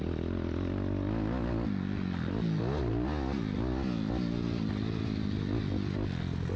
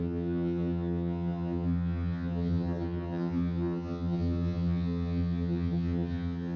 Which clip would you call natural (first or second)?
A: first